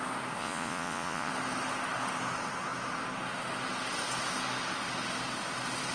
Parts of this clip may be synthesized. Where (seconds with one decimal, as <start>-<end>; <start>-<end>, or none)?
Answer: 0.4-1.3